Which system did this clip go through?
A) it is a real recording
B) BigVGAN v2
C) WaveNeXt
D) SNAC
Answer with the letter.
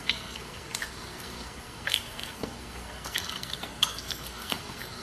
D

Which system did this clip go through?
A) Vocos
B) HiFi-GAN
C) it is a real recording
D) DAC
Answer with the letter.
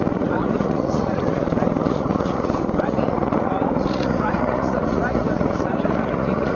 A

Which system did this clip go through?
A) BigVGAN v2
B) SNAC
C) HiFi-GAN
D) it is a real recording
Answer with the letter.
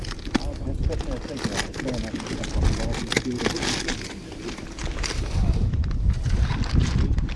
D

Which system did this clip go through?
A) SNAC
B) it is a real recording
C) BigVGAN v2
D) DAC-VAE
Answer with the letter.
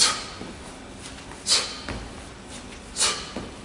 B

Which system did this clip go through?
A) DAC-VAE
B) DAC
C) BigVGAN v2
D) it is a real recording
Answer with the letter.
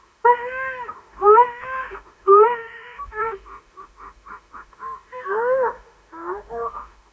A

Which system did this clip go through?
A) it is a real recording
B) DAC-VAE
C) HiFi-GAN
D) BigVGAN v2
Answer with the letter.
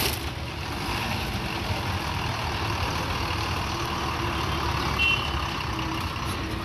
A